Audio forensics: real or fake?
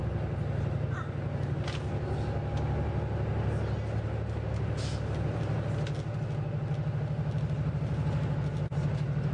real